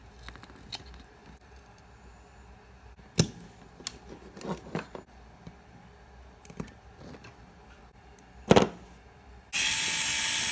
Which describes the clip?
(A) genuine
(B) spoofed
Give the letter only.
A